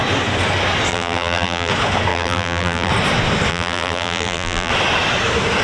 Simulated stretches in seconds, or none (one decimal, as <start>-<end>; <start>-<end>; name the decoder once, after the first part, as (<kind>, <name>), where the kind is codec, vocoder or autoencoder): 0.9-1.7 (vocoder, BigVGAN v2); 2.1-2.9; 3.5-4.7